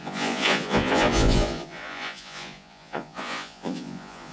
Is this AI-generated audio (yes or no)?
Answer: yes